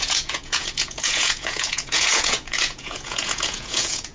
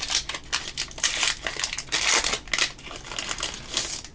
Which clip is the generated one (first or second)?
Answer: first